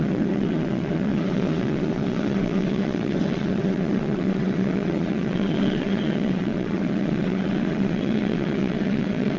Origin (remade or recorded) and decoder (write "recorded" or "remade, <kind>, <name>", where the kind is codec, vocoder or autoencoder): remade, vocoder, WaveNeXt